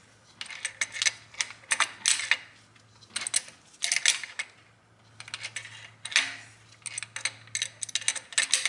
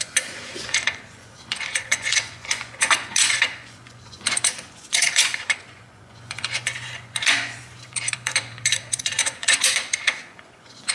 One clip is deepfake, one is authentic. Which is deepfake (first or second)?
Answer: second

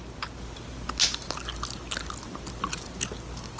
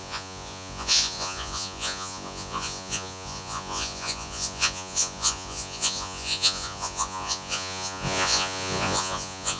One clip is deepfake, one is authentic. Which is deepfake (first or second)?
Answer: second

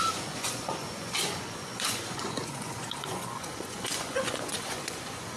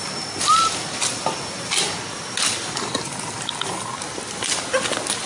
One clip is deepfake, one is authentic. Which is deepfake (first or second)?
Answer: first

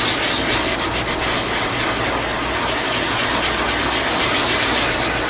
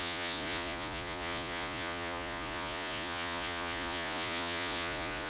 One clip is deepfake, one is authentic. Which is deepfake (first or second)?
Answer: second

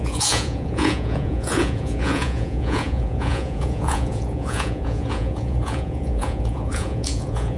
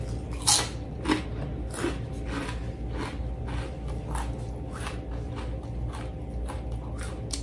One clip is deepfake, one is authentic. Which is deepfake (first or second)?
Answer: first